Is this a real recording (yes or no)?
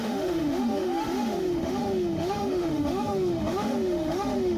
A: no